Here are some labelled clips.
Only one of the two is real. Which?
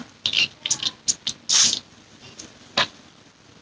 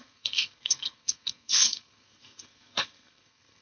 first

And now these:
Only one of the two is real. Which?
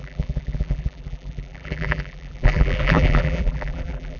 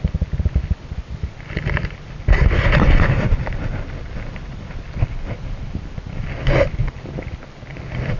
second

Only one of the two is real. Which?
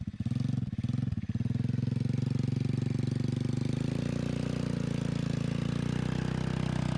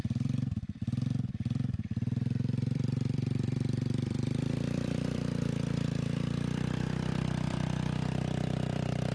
first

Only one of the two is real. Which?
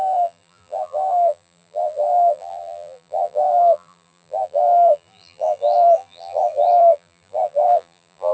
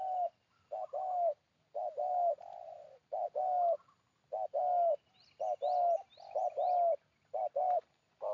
second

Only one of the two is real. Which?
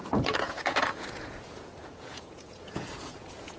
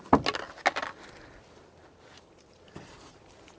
second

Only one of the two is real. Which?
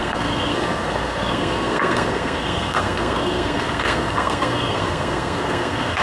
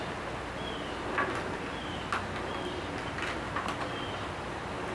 second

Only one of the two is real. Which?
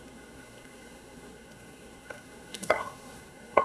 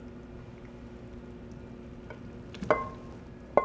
second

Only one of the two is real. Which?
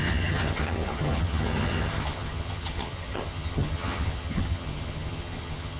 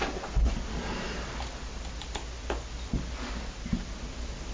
second